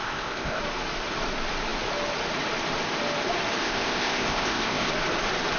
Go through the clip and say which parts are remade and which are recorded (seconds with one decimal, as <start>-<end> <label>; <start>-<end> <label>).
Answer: 0.0-0.6 remade; 0.6-3.6 recorded; 3.6-4.9 remade; 4.9-5.6 recorded